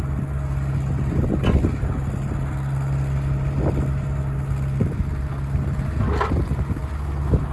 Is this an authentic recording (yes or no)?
yes